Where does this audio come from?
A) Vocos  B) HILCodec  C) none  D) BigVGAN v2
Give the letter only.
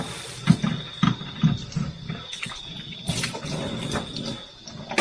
C